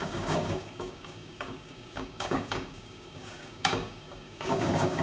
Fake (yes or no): yes